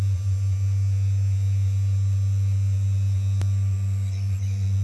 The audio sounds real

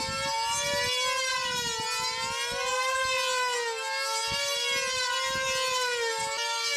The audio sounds real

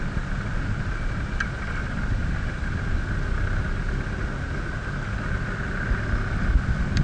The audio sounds real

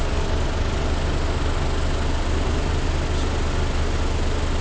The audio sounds real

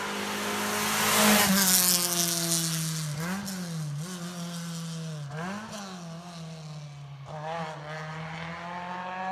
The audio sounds real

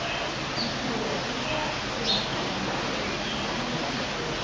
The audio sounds real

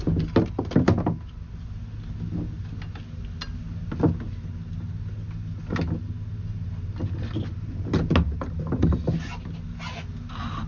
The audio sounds real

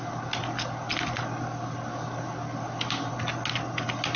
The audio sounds real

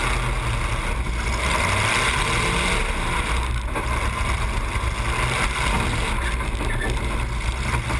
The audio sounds real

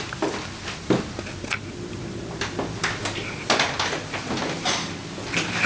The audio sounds real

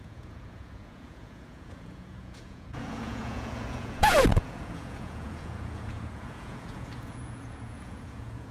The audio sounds fake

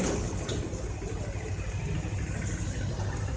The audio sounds real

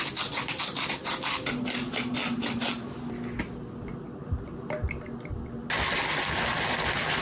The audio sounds real